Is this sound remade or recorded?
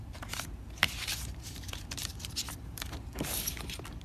remade